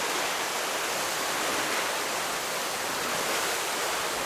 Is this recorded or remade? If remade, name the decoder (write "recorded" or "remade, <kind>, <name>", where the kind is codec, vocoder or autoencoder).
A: recorded